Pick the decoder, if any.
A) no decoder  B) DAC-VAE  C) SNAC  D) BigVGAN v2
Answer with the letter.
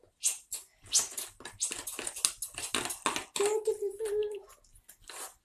A